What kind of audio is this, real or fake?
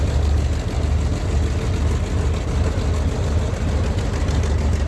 real